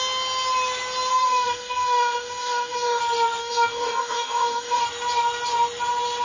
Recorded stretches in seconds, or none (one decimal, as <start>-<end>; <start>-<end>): 0.0-1.1; 3.0-3.4; 4.8-6.2